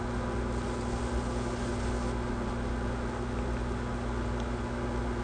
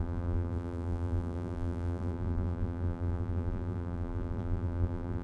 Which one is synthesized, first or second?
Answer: second